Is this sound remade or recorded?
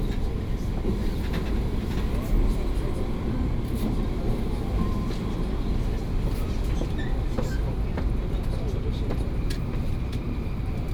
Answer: recorded